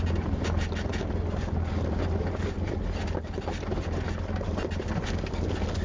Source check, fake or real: real